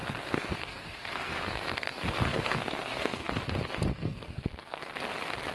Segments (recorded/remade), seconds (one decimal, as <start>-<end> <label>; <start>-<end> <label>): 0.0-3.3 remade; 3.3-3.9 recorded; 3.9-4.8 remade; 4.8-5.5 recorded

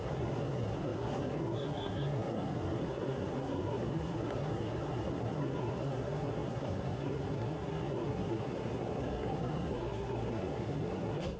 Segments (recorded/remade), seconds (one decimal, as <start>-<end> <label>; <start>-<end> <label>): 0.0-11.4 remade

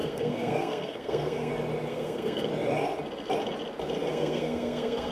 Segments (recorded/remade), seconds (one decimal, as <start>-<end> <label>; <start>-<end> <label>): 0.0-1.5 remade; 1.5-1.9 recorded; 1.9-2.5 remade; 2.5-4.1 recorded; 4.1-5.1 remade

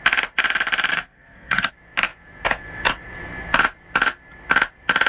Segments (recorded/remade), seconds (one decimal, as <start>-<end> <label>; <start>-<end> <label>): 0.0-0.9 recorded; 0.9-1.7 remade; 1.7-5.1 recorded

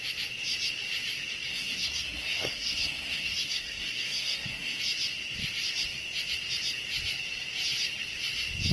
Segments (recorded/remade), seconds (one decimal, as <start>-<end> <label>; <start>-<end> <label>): 0.0-1.5 recorded; 1.5-4.8 remade; 4.8-8.7 recorded

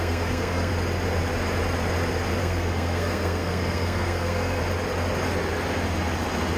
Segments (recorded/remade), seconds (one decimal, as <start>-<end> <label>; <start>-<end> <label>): 0.0-0.7 remade; 0.7-2.4 recorded; 2.4-4.6 remade; 4.6-6.6 recorded

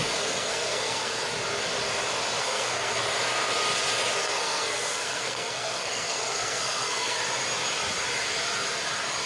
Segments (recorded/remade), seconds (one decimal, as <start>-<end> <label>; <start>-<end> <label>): 0.0-1.2 remade; 1.2-2.4 recorded; 2.4-3.0 remade; 3.0-4.2 recorded; 4.2-7.2 remade; 7.2-9.3 recorded